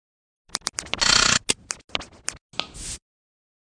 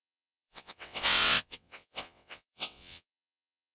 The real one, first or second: first